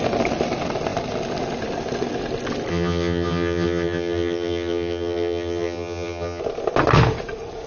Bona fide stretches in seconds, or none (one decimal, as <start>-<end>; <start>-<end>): 0.0-2.7; 6.4-7.7